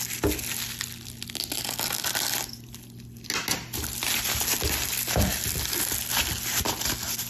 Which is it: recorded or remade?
recorded